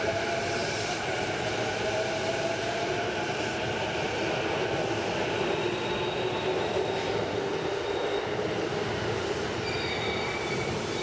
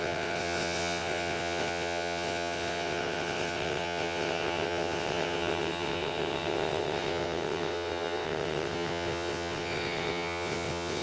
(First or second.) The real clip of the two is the first